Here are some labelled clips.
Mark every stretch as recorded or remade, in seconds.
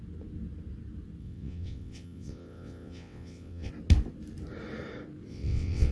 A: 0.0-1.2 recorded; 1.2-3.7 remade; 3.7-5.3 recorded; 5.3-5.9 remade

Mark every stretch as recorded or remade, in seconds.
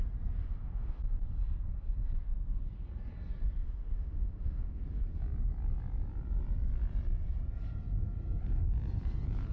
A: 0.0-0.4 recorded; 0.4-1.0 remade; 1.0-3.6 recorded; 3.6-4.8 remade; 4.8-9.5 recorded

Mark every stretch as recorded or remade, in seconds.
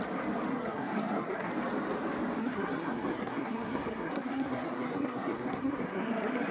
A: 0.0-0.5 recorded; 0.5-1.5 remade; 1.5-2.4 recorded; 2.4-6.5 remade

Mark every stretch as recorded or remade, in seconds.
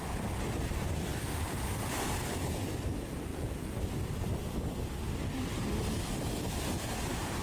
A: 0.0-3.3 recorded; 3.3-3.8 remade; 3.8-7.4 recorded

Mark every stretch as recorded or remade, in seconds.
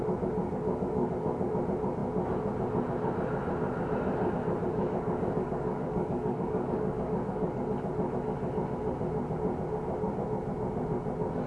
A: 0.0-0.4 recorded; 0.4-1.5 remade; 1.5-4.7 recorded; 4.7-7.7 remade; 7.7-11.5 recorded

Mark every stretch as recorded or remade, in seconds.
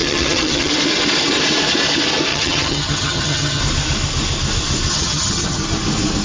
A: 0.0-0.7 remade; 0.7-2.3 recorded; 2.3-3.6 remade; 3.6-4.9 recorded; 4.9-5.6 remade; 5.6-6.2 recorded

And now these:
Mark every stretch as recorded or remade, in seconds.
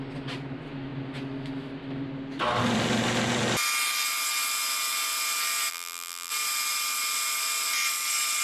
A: 0.0-5.7 recorded; 5.7-6.3 remade; 6.3-8.4 recorded